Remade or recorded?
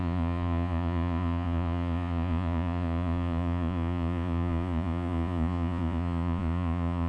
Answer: remade